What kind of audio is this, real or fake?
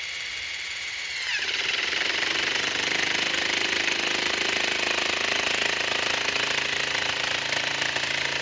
real